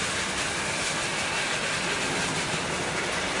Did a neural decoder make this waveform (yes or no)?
no